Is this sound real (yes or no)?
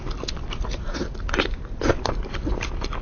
yes